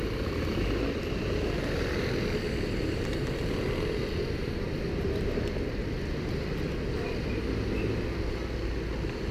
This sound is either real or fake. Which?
real